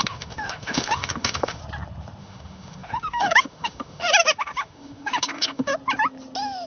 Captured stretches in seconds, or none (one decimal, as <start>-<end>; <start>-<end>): 1.6-2.2; 5.7-6.7